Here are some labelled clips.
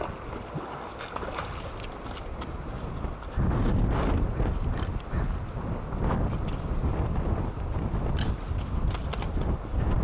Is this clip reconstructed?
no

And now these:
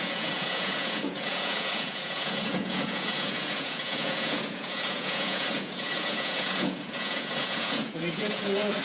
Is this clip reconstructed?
yes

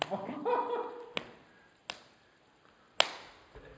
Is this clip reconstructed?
no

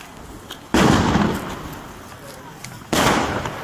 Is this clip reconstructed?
no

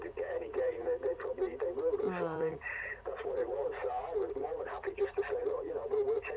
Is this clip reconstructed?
yes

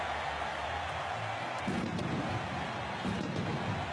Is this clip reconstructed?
no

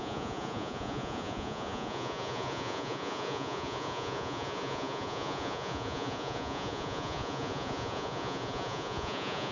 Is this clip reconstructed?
yes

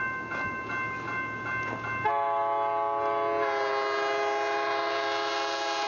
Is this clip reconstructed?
no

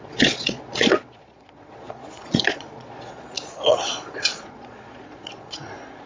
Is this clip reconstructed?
yes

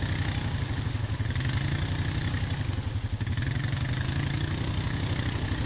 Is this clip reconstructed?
no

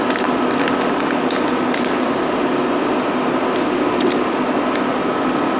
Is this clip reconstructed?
no